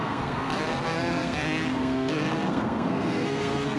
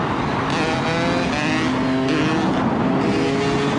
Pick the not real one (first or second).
first